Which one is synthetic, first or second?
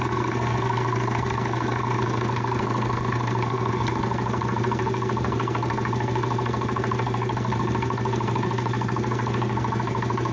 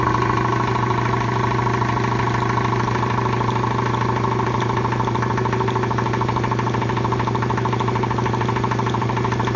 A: first